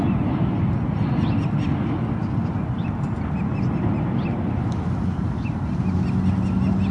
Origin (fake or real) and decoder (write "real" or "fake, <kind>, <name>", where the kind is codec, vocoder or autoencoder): real